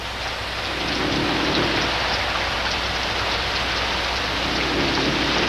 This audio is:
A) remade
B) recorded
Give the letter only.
B